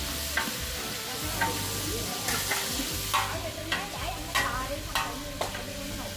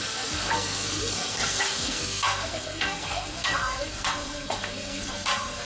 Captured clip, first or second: first